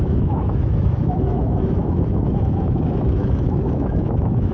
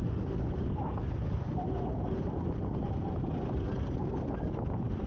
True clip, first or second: second